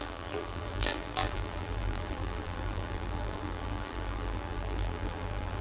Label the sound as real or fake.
fake